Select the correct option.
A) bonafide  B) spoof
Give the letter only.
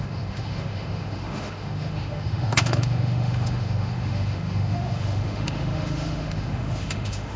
B